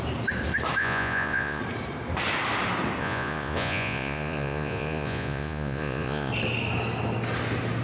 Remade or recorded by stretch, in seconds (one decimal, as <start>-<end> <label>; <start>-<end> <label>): 0.0-0.8 recorded; 0.8-1.6 remade; 1.6-3.0 recorded; 3.0-6.3 remade; 6.3-7.8 recorded